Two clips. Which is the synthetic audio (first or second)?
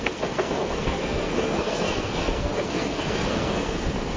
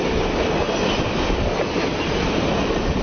first